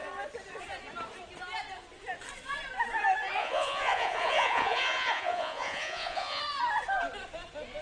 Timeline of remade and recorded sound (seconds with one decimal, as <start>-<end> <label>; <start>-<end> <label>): 0.0-3.4 recorded; 3.4-6.4 remade; 6.4-7.8 recorded